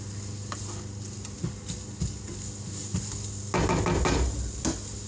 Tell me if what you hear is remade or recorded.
recorded